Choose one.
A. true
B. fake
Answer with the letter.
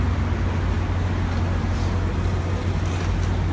A